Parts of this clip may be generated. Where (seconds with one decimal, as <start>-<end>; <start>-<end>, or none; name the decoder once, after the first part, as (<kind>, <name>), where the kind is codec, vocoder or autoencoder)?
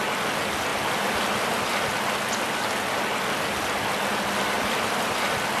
none